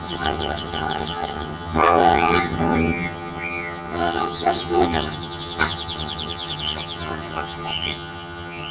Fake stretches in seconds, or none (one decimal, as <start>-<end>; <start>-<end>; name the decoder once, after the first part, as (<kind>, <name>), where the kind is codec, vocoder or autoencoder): 0.0-8.7 (vocoder, HiFi-GAN)